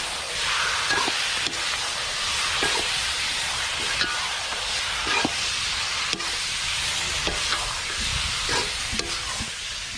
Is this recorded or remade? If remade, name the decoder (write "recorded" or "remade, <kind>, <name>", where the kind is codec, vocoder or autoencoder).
recorded